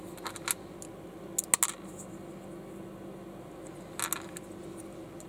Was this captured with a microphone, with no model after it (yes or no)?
yes